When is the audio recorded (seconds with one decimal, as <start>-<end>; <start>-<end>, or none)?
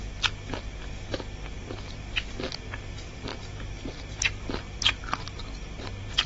0.0-6.3